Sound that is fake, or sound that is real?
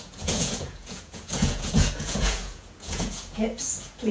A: fake